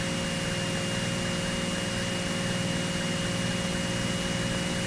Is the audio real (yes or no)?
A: yes